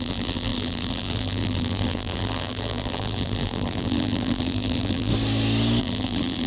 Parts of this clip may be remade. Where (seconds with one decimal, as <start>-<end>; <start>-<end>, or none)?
0.0-5.1; 5.8-6.5